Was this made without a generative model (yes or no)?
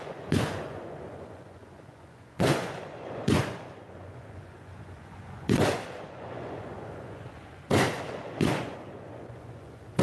no